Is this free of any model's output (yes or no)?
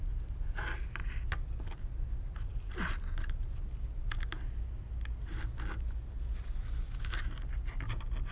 yes